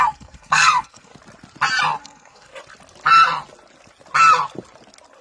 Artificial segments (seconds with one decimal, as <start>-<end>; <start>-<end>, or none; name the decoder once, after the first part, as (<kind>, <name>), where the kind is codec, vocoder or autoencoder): 0.0-1.1 (codec, SNAC); 2.0-2.5